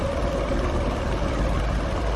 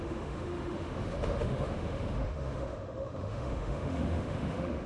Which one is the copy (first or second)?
second